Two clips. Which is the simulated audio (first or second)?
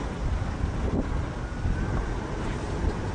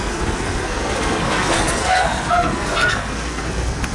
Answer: second